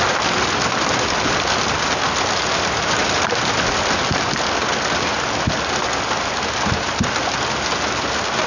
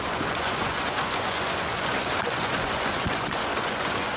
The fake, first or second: second